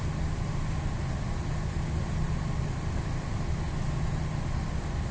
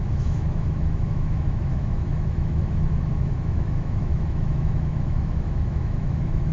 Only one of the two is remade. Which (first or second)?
second